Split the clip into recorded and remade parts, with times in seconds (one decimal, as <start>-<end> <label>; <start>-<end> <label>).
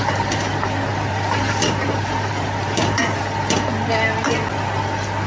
0.0-0.9 recorded; 0.9-3.2 remade; 3.2-5.3 recorded